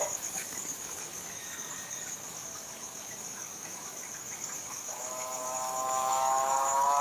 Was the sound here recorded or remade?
remade